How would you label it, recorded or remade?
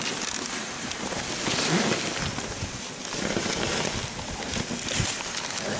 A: recorded